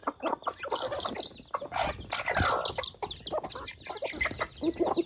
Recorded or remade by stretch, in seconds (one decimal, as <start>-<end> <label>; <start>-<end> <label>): 0.0-1.1 remade; 1.1-5.1 recorded